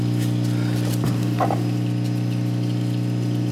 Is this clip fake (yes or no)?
no